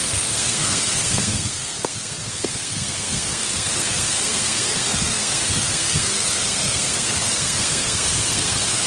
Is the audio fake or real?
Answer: fake